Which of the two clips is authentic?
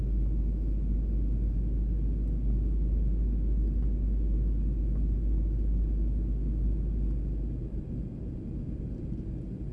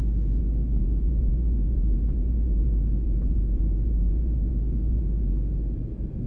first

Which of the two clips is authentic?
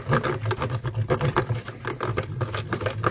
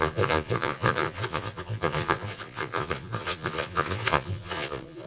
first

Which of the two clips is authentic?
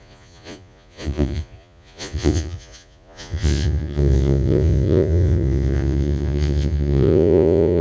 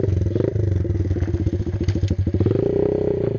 second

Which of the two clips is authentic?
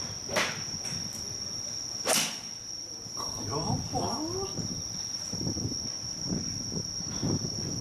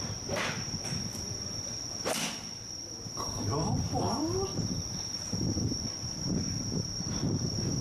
first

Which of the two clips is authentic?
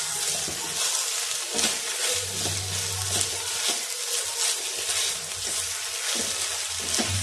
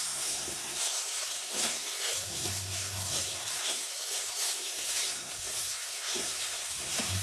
first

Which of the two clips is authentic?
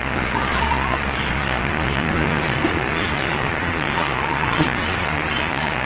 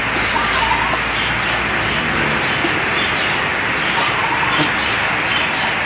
second